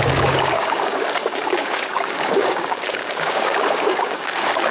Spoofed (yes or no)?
yes